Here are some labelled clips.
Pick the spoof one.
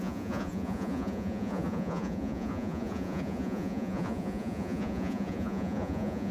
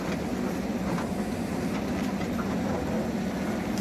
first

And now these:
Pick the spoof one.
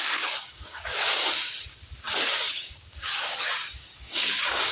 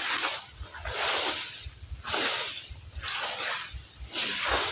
first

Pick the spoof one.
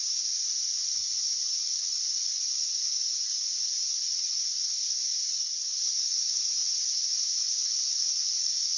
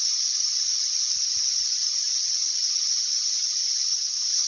first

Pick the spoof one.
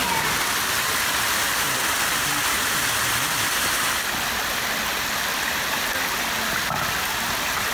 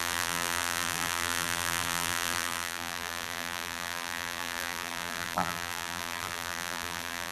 second